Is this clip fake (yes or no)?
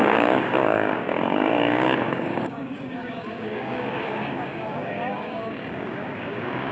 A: yes